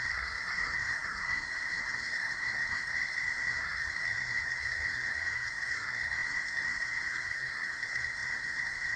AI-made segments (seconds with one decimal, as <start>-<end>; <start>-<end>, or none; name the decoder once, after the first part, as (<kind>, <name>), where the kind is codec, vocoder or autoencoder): 0.0-9.0 (codec, SNAC)